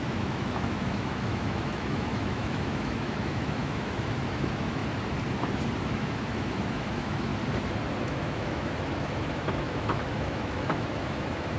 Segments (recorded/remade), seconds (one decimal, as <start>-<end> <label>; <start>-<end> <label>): 0.0-4.8 remade; 4.8-5.8 recorded; 5.8-7.3 remade; 7.3-8.0 recorded; 8.0-11.6 remade